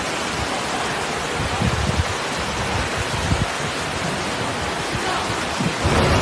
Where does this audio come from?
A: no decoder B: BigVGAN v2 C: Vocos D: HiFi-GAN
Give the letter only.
A